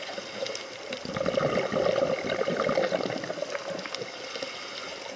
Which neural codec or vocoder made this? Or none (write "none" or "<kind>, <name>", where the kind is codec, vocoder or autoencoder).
none